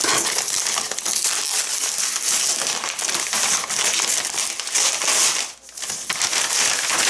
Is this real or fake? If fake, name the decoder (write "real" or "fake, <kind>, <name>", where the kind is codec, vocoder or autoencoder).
real